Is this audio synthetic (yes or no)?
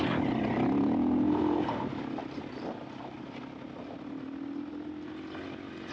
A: no